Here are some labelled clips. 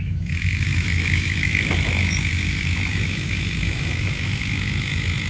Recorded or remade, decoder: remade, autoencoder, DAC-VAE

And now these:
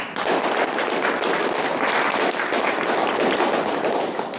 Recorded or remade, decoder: recorded